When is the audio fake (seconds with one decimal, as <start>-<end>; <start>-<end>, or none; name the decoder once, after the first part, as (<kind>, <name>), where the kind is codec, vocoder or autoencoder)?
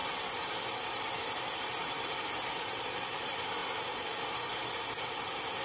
1.8-3.6 (vocoder, BigVGAN v2)